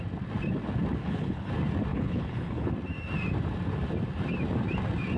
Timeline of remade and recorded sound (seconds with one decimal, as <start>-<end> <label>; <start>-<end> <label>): 0.0-1.0 recorded; 1.0-1.5 remade; 1.5-1.9 recorded; 1.9-2.7 remade; 2.7-5.2 recorded